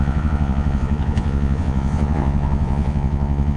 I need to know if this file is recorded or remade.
remade